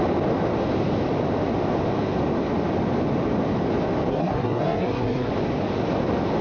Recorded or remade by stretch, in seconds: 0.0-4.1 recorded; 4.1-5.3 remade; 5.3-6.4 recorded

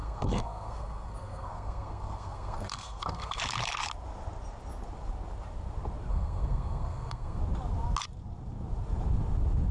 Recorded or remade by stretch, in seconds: 0.0-3.4 remade; 3.4-6.1 recorded; 6.1-7.4 remade; 7.4-9.7 recorded

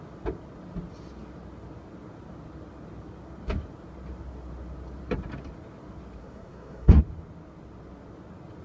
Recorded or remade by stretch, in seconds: 0.0-6.2 recorded; 6.2-7.0 remade; 7.0-8.6 recorded

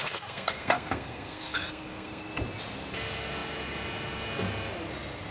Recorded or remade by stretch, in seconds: 0.0-2.3 remade; 2.3-5.3 recorded

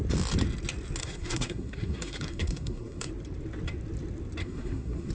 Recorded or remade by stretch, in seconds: 0.0-1.0 recorded; 1.0-3.1 remade; 3.1-4.4 recorded; 4.4-5.1 remade